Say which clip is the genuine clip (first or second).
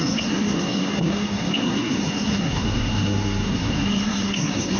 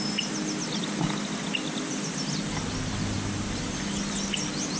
second